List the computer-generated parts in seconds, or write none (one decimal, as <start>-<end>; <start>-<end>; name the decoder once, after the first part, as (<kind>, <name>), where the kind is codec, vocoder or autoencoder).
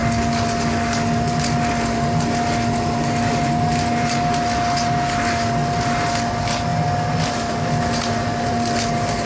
none